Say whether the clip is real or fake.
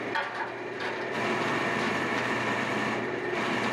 fake